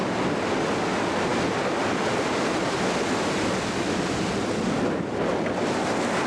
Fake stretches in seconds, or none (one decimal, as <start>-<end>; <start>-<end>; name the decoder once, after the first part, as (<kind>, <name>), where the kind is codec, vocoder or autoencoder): none